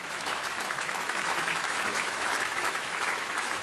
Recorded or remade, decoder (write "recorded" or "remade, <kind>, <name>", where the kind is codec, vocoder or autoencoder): remade, autoencoder, DAC-VAE